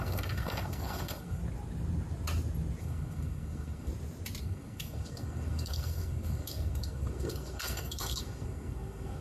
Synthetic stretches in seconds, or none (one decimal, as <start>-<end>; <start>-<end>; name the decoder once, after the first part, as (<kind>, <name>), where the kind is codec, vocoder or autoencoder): 0.0-1.4 (codec, SNAC); 2.8-3.9; 4.4-9.2